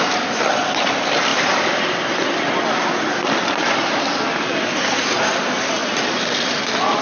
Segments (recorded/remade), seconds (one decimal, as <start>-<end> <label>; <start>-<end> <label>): 0.0-7.0 recorded